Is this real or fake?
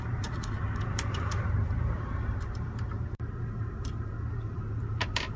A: fake